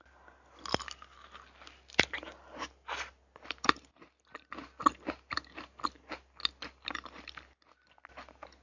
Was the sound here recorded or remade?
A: recorded